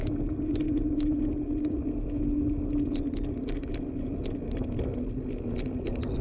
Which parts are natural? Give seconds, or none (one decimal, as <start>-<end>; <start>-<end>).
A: 0.0-6.2